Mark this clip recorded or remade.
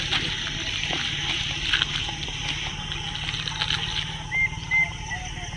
recorded